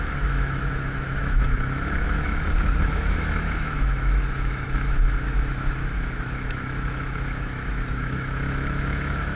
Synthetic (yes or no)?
yes